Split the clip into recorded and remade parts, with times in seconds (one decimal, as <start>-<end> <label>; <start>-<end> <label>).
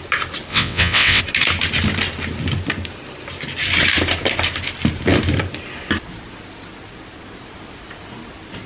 0.0-0.5 recorded; 0.5-1.2 remade; 1.2-8.7 recorded